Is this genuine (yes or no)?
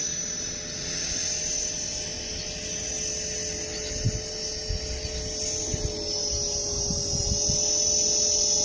yes